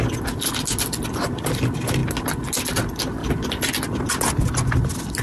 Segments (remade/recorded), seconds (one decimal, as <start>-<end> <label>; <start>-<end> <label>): 0.0-5.2 recorded